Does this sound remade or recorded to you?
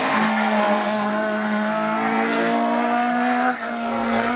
remade